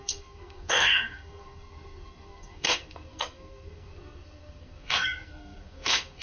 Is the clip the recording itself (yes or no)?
no